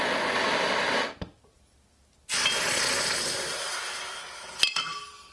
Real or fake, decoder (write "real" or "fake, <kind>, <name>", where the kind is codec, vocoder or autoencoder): real